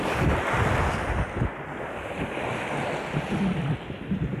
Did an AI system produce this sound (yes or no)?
no